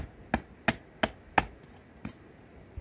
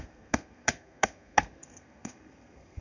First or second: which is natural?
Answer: first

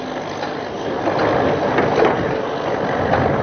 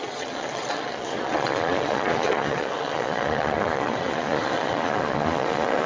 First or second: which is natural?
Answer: first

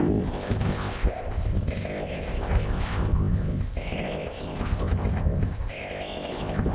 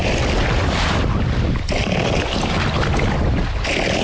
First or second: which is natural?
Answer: second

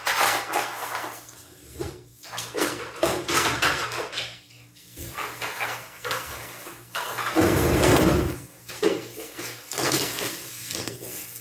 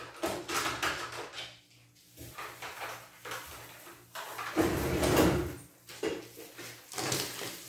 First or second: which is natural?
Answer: second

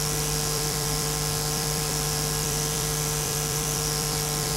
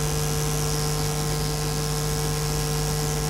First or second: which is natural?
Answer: second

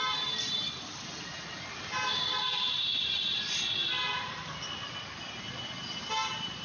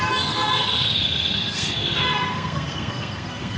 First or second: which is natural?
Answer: first